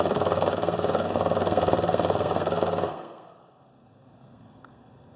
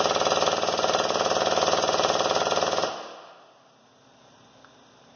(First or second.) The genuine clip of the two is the second